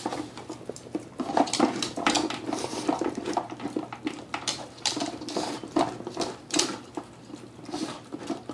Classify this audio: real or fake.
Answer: fake